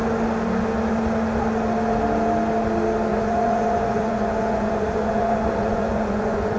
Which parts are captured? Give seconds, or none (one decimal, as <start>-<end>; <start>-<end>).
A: 0.0-3.1